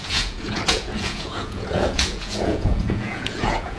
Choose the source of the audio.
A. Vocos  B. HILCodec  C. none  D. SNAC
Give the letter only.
A